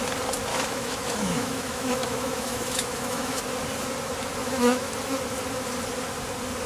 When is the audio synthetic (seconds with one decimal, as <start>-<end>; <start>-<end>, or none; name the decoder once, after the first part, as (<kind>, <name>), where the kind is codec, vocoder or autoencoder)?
0.5-3.4 (autoencoder, DAC-VAE); 4.4-4.9